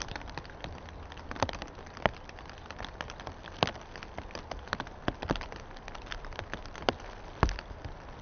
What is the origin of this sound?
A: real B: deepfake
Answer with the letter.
A